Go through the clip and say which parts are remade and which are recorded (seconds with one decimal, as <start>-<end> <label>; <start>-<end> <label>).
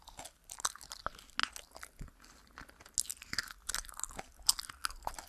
0.0-5.3 recorded